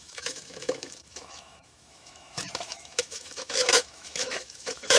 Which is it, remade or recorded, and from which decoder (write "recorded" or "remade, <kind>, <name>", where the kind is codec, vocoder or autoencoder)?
remade, autoencoder, DAC-VAE